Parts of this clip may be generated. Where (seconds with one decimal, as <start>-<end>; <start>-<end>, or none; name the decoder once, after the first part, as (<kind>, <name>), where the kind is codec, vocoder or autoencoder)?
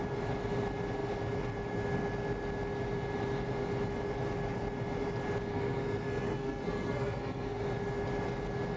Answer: 5.5-7.6 (codec, SNAC)